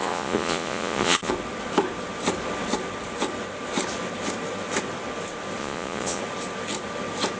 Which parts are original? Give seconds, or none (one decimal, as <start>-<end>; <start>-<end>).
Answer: 1.3-5.6; 6.2-7.4